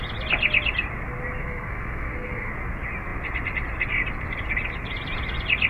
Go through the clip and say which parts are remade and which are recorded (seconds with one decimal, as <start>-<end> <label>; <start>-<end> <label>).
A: 0.0-1.4 recorded; 1.4-2.5 remade; 2.5-5.7 recorded